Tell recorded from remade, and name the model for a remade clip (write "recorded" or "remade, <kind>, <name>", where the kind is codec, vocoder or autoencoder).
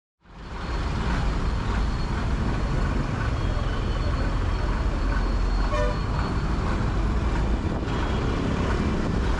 recorded